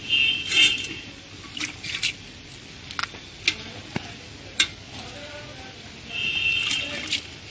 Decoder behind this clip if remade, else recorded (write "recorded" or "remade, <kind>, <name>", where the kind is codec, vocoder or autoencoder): recorded